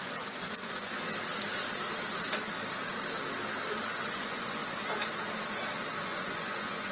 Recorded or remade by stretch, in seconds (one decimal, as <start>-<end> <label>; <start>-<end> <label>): 0.0-0.9 remade; 0.9-4.1 recorded; 4.1-4.6 remade; 4.6-6.0 recorded; 6.0-6.9 remade